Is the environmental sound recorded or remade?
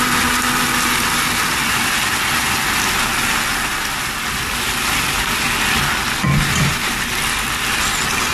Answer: recorded